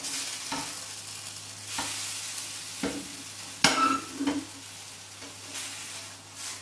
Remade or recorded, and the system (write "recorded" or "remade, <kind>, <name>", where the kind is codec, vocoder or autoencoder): recorded